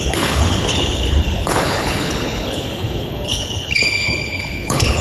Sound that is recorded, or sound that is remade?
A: remade